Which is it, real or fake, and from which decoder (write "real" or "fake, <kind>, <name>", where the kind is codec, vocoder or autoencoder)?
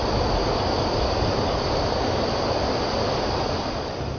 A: real